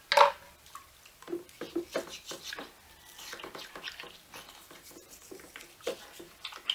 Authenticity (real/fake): real